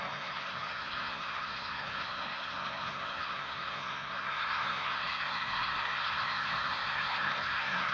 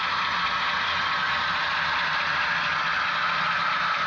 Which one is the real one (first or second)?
second